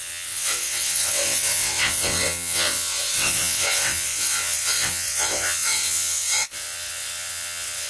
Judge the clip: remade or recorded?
remade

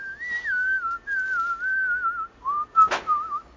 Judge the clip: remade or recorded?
recorded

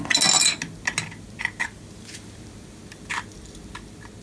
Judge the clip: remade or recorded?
recorded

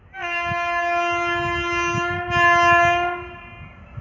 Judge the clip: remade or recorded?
recorded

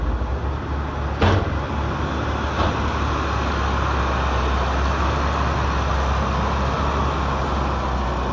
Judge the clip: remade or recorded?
recorded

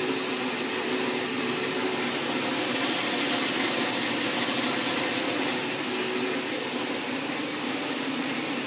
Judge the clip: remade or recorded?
recorded